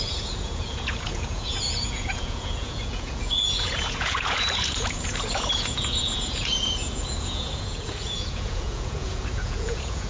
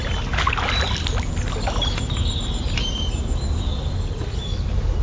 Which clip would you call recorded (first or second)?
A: second